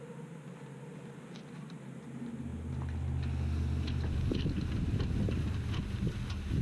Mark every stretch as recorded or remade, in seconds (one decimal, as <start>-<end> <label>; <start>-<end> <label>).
0.0-6.6 recorded